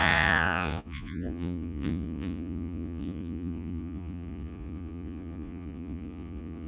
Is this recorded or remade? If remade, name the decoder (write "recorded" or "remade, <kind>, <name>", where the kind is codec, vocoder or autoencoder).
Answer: remade, vocoder, Vocos